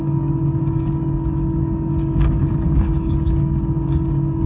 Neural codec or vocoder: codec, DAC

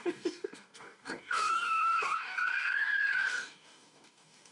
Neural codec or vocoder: codec, DAC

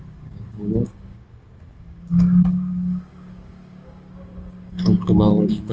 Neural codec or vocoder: codec, DAC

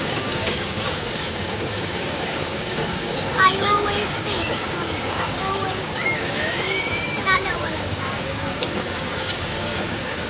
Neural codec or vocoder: codec, DAC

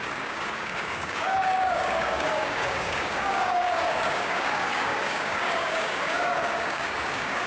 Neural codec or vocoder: codec, DAC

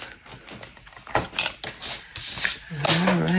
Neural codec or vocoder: none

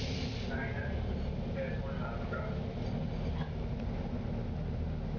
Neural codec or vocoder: none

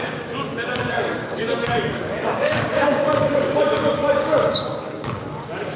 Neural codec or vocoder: codec, DAC